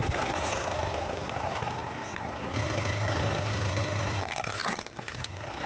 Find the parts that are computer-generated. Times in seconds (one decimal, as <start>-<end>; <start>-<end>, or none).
0.0-5.7